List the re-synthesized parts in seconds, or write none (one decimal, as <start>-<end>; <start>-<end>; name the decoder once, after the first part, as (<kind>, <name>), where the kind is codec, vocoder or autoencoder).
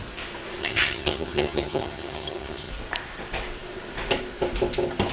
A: 0.6-2.7 (vocoder, HiFi-GAN)